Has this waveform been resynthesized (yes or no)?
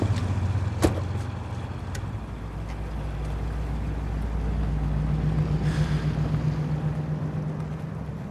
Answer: no